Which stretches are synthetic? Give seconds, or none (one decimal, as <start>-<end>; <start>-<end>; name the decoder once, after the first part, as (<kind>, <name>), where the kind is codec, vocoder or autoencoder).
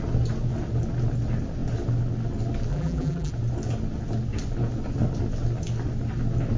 2.7-3.3 (vocoder, BigVGAN v2)